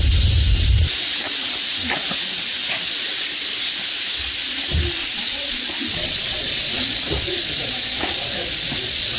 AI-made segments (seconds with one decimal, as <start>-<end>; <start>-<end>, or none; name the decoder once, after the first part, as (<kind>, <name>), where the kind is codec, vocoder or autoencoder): 5.0-9.2 (vocoder, Vocos)